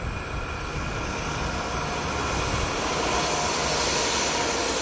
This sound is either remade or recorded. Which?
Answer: recorded